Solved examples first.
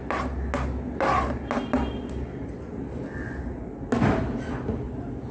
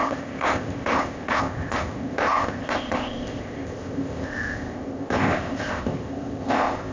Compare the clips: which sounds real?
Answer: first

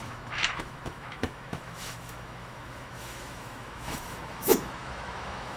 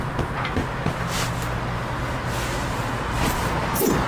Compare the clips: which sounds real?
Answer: second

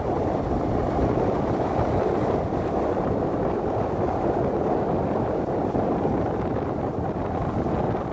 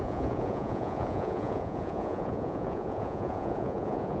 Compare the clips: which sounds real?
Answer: first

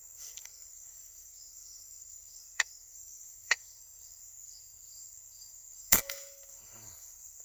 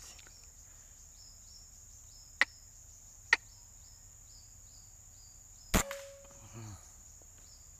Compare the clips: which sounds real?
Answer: second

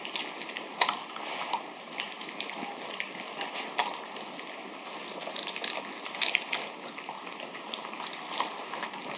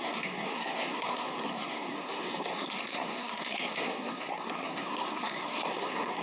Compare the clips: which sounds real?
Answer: first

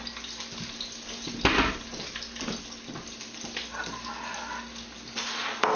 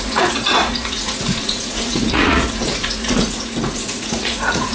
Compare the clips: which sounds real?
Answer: first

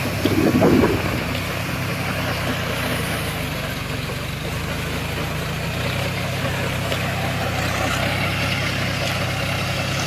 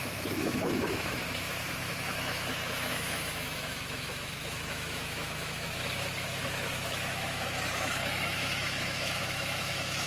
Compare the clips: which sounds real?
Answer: first